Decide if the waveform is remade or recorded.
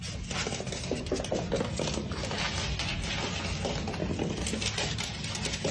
recorded